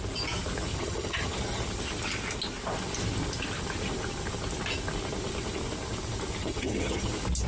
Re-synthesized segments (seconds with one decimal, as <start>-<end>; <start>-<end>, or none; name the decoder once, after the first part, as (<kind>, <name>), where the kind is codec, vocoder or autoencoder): 0.7-1.7 (vocoder, HiFi-GAN); 6.4-7.1